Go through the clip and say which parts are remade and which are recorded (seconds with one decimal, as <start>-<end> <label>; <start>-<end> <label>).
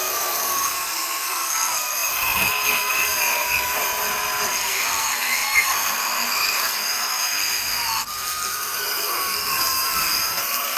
0.0-3.8 remade; 3.8-4.5 recorded; 4.5-10.8 remade